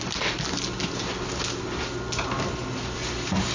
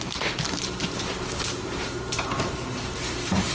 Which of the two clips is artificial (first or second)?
second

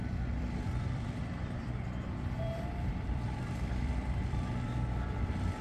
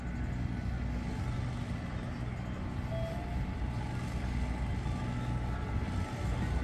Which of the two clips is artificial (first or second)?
first